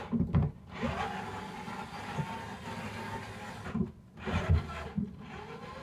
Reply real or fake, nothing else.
real